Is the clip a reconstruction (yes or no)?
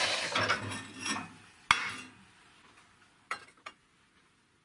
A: no